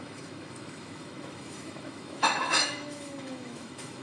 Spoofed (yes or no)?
yes